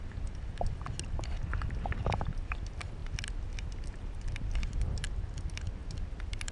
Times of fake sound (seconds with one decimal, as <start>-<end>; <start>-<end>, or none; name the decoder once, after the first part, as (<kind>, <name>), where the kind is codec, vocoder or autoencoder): none